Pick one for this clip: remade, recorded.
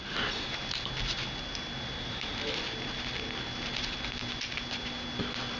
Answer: recorded